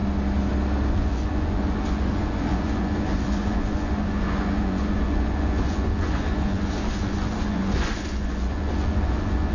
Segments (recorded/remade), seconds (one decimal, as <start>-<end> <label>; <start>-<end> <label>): 0.0-0.9 recorded; 0.9-9.5 remade